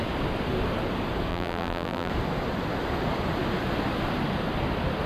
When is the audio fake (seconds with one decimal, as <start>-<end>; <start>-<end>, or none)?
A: 1.3-2.1